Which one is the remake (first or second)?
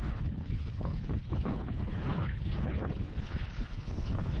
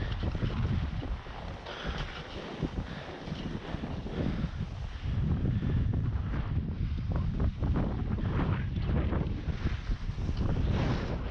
first